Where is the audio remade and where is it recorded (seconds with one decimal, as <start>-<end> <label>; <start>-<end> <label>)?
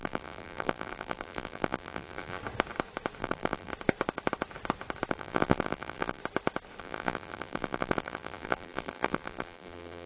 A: 0.0-2.4 remade; 2.4-3.2 recorded; 3.2-3.7 remade; 3.7-5.1 recorded; 5.1-6.2 remade; 6.2-6.8 recorded; 6.8-10.1 remade